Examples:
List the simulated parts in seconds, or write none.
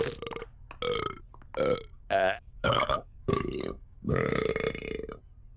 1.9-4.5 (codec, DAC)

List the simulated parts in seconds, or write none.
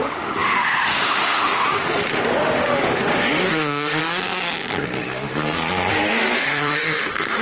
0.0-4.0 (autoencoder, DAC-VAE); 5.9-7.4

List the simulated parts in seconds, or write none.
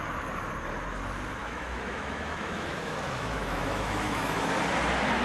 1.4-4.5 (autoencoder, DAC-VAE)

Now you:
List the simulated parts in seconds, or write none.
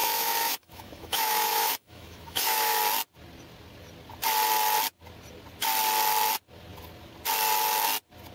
0.0-2.8 (autoencoder, DAC-VAE)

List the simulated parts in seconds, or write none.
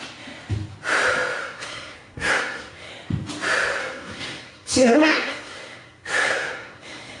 1.4-2.9 (codec, SNAC); 3.8-7.2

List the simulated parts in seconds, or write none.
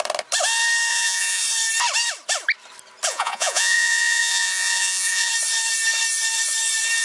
0.9-1.4 (vocoder, Vocos); 3.1-5.3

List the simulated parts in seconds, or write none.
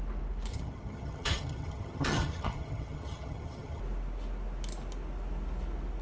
0.5-3.8 (vocoder, HiFi-GAN)